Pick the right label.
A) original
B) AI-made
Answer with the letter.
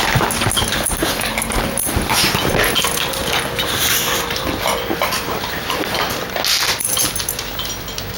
A